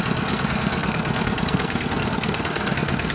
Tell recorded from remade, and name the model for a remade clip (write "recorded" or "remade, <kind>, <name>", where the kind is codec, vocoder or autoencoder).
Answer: remade, codec, SNAC